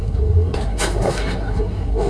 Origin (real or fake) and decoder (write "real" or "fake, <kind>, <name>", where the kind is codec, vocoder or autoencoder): fake, codec, SNAC